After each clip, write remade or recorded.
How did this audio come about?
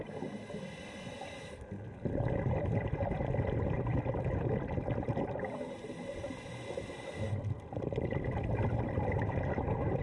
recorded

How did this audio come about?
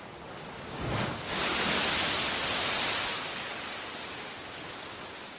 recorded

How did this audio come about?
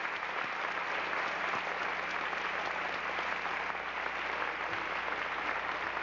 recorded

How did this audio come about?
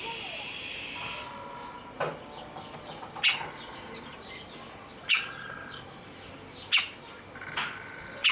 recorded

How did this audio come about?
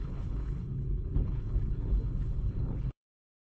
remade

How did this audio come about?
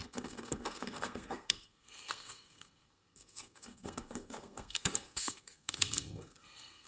remade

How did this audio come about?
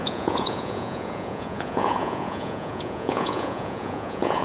remade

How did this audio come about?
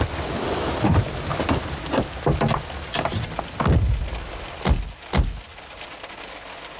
recorded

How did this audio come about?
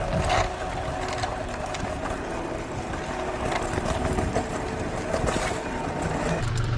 recorded